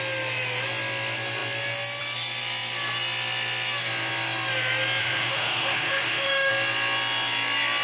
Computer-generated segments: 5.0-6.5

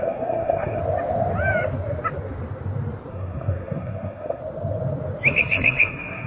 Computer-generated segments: 0.0-0.8; 3.1-4.4; 5.3-6.3

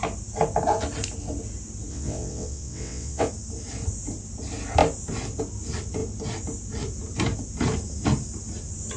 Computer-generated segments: 1.9-3.3

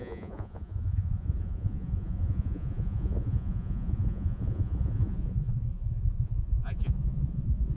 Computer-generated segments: 0.0-7.8

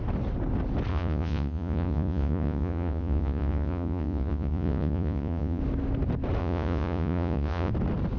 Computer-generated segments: 0.9-5.6; 6.4-7.7